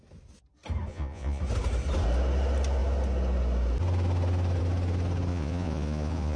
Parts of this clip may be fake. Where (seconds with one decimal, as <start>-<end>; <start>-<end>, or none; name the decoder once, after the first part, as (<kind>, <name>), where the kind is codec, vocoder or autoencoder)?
0.9-1.4 (vocoder, Vocos); 5.3-6.4